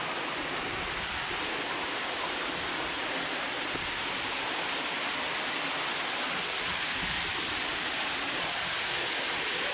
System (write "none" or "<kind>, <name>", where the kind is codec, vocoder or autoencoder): none